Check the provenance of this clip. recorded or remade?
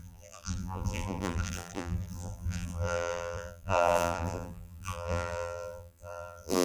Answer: remade